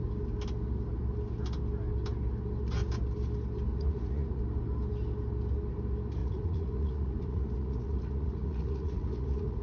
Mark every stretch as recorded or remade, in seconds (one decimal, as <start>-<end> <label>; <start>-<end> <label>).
0.0-3.7 recorded; 3.7-4.4 remade; 4.4-6.2 recorded; 6.2-9.6 remade